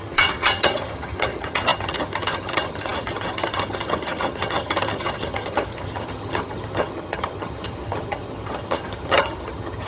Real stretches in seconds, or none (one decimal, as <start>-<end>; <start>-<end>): none